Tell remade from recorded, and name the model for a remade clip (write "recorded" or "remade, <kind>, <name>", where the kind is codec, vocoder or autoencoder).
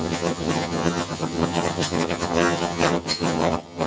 remade, vocoder, HiFi-GAN